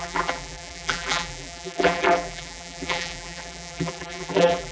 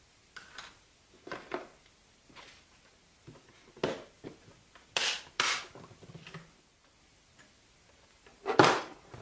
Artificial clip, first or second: first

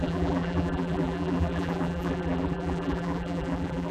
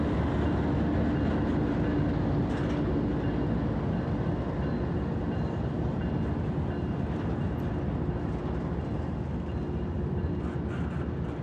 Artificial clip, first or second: first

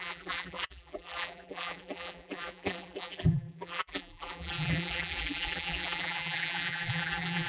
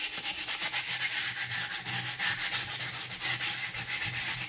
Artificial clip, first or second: first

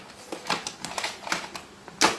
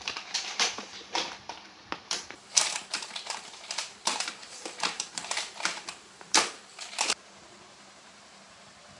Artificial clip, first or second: second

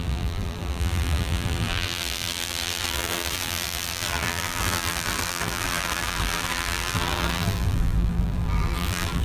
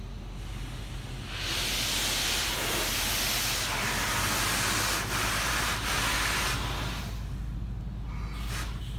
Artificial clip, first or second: first